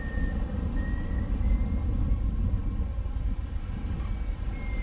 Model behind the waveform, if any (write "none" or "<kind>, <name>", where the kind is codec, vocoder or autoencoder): none